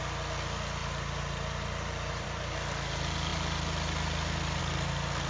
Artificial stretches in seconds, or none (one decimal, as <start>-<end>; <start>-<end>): 0.8-2.5